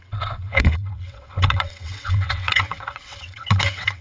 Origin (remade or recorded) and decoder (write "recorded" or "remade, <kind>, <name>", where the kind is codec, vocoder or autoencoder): remade, vocoder, WaveNeXt